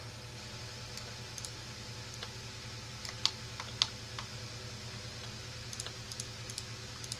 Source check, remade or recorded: recorded